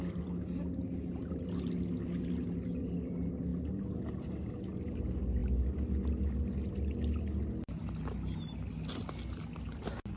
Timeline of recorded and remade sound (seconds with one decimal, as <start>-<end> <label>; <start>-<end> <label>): 0.0-10.2 recorded